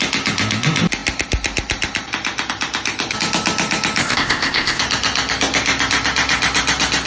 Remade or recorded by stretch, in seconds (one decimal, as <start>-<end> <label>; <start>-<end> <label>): 0.0-4.0 recorded; 4.0-4.8 remade; 4.8-7.1 recorded